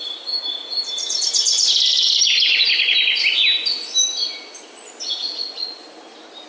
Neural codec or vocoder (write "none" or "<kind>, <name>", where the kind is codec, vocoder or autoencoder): none